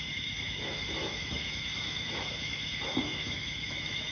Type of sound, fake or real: fake